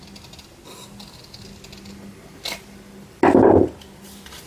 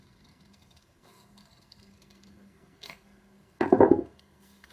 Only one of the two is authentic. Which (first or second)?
first